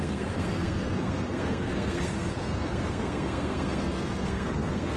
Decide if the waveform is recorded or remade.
remade